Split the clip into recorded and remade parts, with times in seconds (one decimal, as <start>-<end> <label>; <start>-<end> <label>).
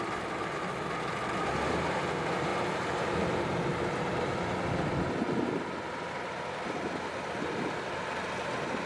0.0-2.5 recorded; 2.5-4.7 remade; 4.7-8.9 recorded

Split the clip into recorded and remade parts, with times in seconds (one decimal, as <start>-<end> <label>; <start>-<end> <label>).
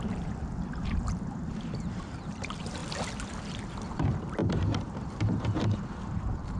0.0-2.8 remade; 2.8-3.9 recorded; 3.9-6.6 remade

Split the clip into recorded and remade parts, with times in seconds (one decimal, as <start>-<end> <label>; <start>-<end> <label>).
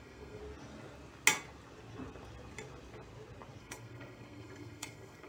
0.0-0.4 remade; 0.4-3.6 recorded; 3.6-5.3 remade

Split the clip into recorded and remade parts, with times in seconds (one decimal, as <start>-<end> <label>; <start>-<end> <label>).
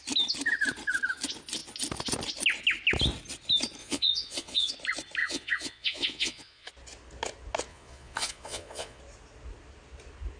0.0-3.8 recorded; 3.8-4.7 remade; 4.7-5.2 recorded; 5.2-6.7 remade; 6.7-7.7 recorded; 7.7-9.0 remade; 9.0-10.4 recorded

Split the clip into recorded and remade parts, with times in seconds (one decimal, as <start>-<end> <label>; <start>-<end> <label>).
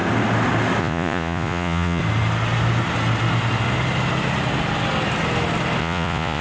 0.0-0.8 recorded; 0.8-2.0 remade; 2.0-5.8 recorded; 5.8-6.4 remade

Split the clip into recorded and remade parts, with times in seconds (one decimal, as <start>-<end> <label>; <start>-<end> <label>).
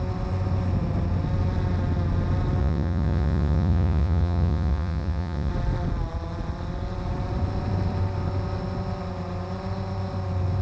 0.0-2.6 recorded; 2.6-5.5 remade; 5.5-10.6 recorded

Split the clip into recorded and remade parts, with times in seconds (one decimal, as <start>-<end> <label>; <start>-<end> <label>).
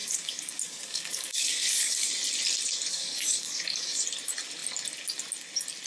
0.0-2.1 remade; 2.1-2.9 recorded; 2.9-4.0 remade; 4.0-5.9 recorded